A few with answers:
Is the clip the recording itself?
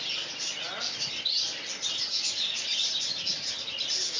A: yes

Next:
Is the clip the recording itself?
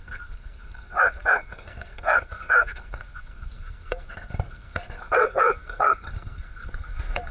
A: no